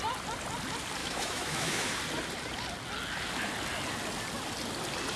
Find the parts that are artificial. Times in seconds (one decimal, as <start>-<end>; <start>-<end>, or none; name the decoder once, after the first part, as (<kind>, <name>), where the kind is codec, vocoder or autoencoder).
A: 1.0-2.0 (autoencoder, DAC-VAE)